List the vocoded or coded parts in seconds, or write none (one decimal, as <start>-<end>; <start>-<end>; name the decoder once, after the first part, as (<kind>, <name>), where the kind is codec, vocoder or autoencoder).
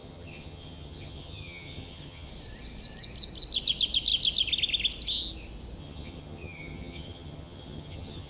0.0-2.3 (vocoder, HiFi-GAN); 5.8-8.3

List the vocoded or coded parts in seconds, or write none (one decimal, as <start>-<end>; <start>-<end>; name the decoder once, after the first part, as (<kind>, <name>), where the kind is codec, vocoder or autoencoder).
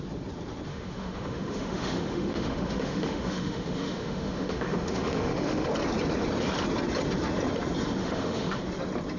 0.7-5.7 (autoencoder, DAC-VAE); 8.0-8.6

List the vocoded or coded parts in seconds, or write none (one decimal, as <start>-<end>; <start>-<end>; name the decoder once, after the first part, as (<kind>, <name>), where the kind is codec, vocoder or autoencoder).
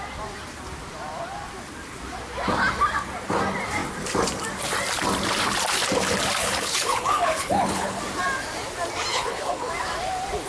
6.4-8.0 (codec, HILCodec); 9.1-9.7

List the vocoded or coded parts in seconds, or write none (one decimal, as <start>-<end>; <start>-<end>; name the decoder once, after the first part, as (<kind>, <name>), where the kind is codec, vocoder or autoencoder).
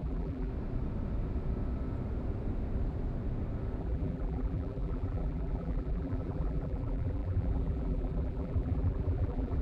0.0-0.5 (vocoder, BigVGAN v2); 3.8-9.6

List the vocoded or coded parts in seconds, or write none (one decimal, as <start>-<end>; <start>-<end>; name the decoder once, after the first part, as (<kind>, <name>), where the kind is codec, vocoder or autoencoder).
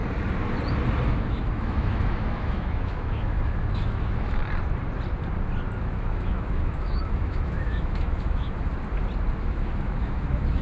1.1-4.4 (autoencoder, DAC-VAE); 5.8-8.7; 9.4-10.6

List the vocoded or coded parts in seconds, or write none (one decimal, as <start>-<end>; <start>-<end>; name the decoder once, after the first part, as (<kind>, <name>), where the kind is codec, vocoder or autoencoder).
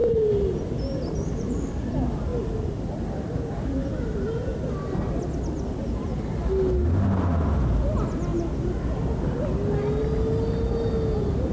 0.0-1.9 (vocoder, BigVGAN v2)